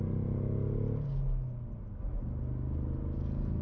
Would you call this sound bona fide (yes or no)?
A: yes